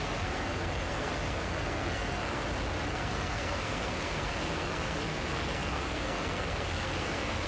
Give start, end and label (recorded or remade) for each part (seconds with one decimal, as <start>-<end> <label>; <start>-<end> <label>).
0.0-2.4 remade; 2.4-2.9 recorded; 2.9-7.5 remade

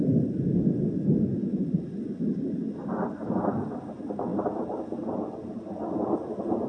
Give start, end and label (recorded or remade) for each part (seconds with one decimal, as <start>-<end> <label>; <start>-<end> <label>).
0.0-4.3 recorded; 4.3-6.3 remade; 6.3-6.7 recorded